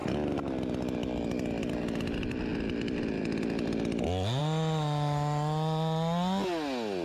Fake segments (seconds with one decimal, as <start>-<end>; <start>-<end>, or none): none